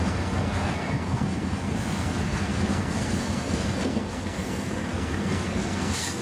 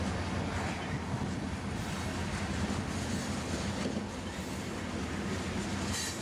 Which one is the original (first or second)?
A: second